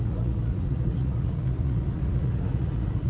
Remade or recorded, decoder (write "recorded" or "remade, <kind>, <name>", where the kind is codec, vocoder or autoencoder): remade, vocoder, Vocos